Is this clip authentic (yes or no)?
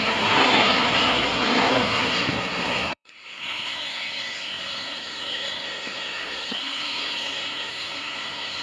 no